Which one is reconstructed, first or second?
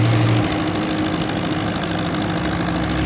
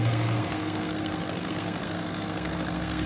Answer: second